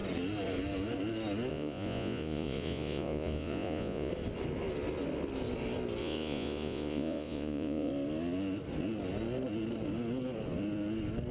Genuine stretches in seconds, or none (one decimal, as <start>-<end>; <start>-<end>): 0.0-1.5; 4.1-6.0; 7.9-11.3